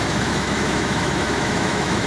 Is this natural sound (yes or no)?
no